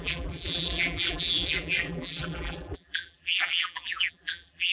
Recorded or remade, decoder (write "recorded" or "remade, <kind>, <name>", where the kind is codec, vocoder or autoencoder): remade, vocoder, BigVGAN v2